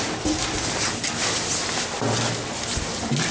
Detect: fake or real real